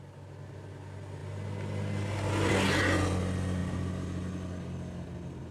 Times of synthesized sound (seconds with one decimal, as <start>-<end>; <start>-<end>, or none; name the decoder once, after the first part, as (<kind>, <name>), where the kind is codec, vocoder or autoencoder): none